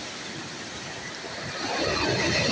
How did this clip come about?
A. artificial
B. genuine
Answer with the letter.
A